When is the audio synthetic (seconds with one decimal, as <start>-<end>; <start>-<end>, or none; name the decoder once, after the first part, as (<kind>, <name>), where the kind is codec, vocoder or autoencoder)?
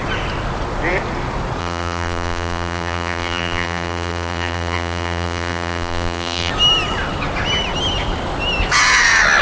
1.6-6.5 (vocoder, BigVGAN v2)